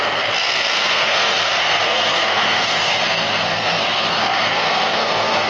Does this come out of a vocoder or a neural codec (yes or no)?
yes